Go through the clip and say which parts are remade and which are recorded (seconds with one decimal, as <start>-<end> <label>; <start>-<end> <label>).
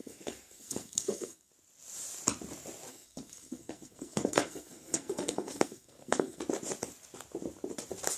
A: 0.0-1.5 remade; 1.5-2.9 recorded; 2.9-6.4 remade; 6.4-8.2 recorded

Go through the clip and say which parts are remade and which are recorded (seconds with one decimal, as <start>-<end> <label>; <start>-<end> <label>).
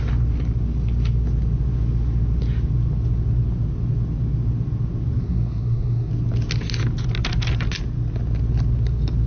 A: 0.0-5.2 recorded; 5.2-6.1 remade; 6.1-9.3 recorded